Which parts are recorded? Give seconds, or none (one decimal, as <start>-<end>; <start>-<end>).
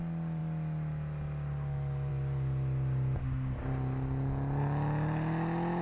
0.0-5.8